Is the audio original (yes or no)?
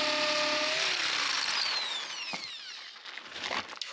yes